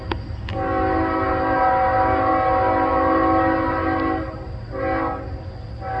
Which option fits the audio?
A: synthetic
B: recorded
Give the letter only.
B